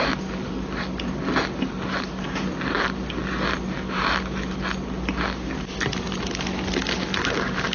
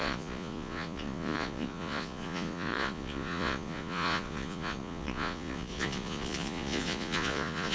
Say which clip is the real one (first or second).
first